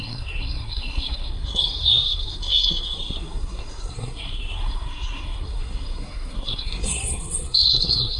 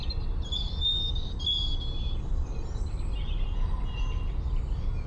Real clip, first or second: second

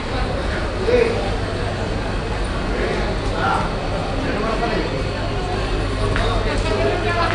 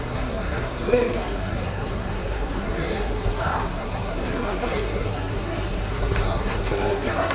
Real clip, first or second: first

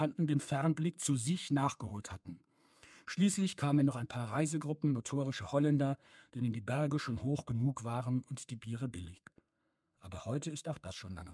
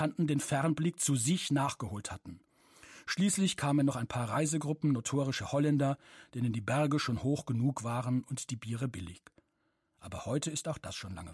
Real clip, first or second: second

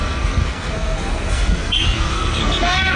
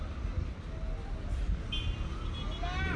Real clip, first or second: second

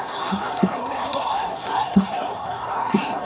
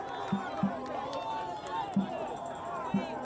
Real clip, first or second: second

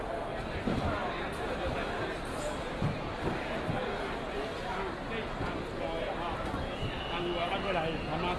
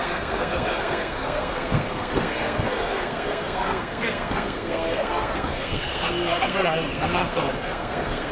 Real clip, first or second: first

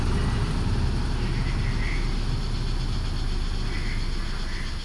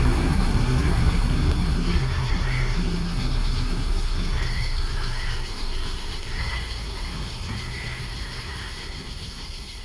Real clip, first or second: first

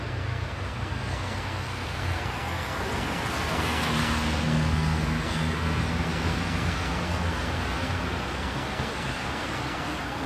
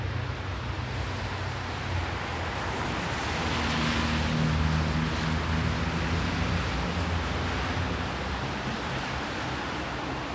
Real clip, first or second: second